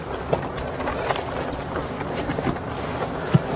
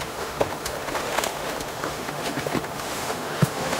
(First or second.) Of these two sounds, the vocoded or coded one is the second